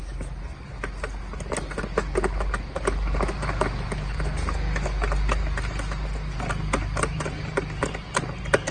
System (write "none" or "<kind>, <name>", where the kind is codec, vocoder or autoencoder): none